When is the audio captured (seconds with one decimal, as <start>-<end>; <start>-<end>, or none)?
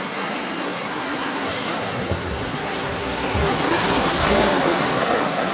none